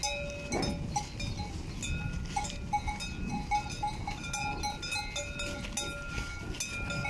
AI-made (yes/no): no